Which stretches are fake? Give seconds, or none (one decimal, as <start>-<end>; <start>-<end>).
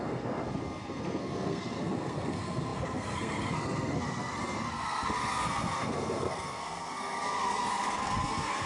0.0-8.7